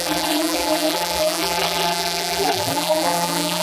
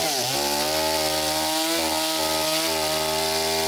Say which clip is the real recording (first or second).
second